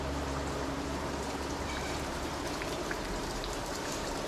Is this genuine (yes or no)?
no